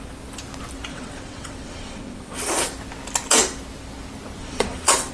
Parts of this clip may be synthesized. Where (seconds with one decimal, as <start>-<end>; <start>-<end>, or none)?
0.9-2.5; 4.4-5.1